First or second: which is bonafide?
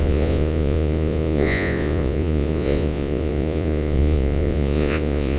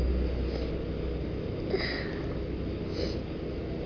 second